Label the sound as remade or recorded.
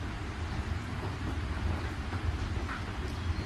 recorded